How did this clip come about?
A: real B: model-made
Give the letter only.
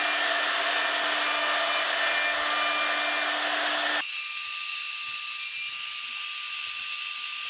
A